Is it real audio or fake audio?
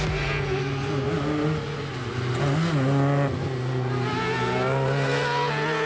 real